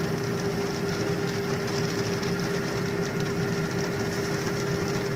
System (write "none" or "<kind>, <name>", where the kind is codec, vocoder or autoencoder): none